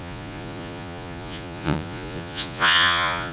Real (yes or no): no